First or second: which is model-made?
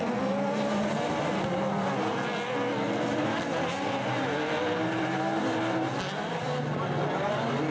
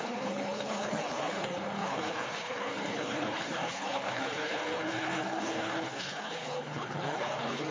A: second